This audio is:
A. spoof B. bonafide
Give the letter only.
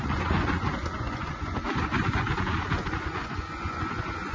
A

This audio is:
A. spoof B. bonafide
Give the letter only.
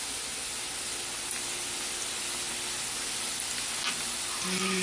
B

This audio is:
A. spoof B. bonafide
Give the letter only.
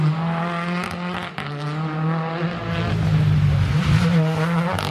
B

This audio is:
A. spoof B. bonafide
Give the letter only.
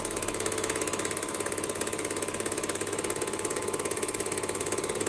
A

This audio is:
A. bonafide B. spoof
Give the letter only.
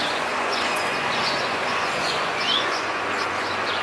B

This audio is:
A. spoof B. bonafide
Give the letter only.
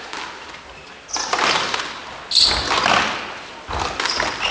B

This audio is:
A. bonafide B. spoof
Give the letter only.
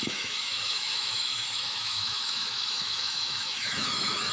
B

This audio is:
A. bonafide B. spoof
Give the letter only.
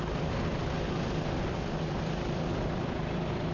A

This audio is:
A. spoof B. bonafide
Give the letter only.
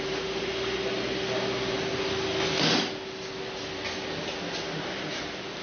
B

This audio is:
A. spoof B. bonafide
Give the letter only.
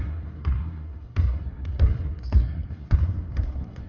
A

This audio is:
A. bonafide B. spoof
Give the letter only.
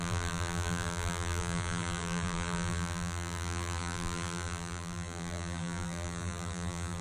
B